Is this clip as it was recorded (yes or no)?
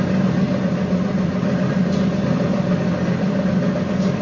yes